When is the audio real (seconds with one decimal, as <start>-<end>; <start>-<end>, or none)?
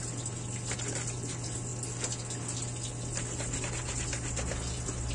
0.0-5.1